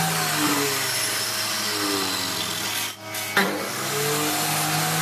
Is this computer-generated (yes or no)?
no